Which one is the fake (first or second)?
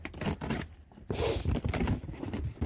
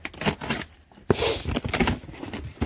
first